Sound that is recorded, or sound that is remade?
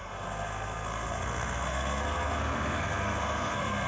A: remade